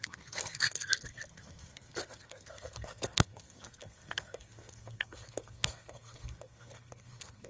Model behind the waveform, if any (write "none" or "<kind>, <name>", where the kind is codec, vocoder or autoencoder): codec, SNAC